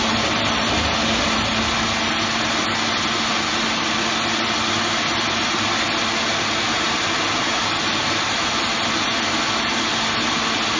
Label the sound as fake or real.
real